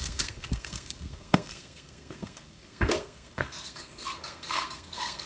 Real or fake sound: fake